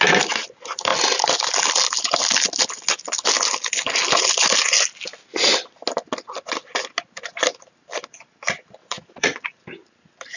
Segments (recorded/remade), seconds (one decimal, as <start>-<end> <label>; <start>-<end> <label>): 0.0-8.8 recorded; 8.8-9.6 remade; 9.6-10.4 recorded